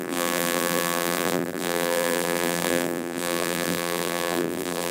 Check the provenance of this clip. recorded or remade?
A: remade